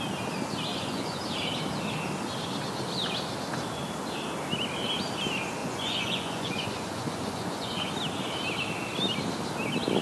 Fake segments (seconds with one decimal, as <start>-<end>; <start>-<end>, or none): 0.7-1.2; 5.6-7.9